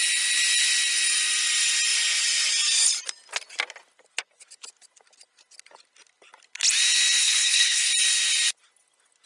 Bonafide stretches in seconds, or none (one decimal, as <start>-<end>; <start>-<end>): 0.0-7.2; 7.9-9.3